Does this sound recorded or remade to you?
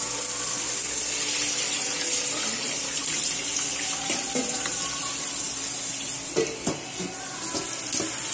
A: recorded